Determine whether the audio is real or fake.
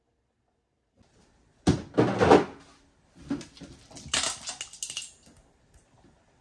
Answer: real